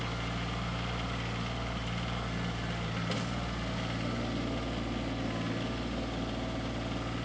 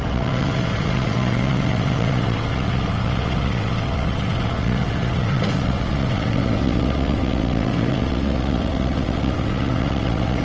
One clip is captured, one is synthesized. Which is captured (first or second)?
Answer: first